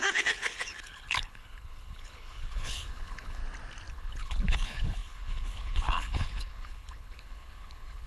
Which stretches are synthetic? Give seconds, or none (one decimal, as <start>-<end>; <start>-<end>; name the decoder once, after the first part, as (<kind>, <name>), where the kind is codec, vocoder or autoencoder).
0.0-3.4 (codec, HILCodec); 3.9-8.1